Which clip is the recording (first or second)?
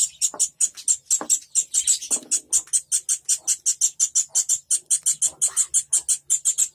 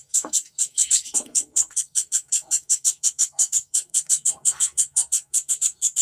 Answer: first